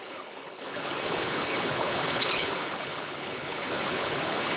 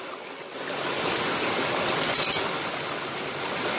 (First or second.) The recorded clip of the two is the second